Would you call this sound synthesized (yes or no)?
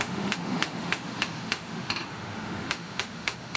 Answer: yes